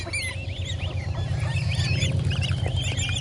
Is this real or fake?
real